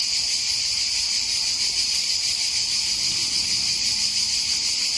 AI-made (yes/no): no